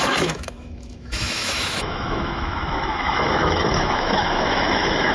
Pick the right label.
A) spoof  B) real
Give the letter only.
A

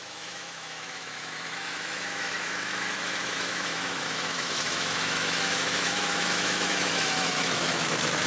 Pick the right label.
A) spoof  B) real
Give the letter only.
A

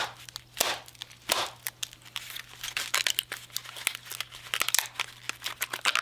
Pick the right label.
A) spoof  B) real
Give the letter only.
B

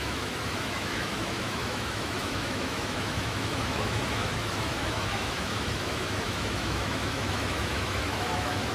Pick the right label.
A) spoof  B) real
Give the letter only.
A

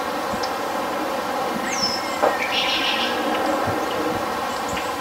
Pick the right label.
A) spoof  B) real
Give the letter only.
B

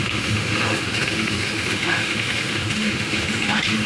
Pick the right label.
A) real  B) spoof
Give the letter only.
B